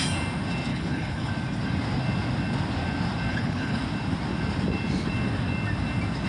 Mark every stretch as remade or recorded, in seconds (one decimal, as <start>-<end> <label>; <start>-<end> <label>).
0.0-0.7 recorded; 0.7-1.3 remade; 1.3-3.3 recorded; 3.3-3.8 remade; 3.8-6.3 recorded